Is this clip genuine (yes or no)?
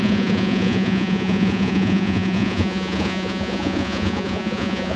no